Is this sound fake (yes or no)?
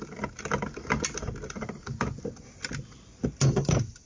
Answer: no